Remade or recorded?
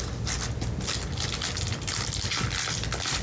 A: recorded